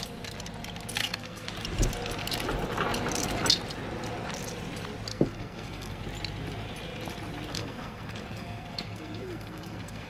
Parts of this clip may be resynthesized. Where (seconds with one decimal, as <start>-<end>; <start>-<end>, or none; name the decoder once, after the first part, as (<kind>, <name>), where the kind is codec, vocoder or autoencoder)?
1.0-1.5 (codec, SNAC); 5.1-6.0; 7.5-10.1